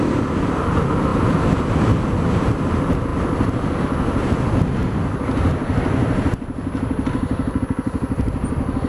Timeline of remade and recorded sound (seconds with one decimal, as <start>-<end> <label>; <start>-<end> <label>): 0.0-8.9 recorded